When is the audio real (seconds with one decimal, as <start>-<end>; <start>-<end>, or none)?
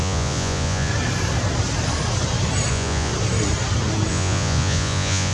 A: 0.9-2.7; 3.1-4.1